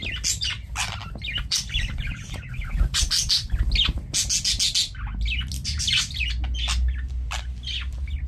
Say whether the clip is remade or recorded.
recorded